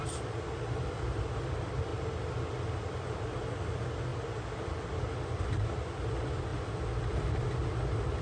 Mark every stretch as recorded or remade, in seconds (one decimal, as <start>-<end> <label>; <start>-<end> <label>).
0.0-8.2 recorded